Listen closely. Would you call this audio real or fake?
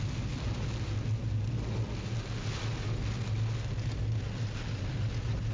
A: real